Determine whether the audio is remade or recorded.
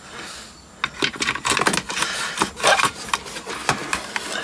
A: recorded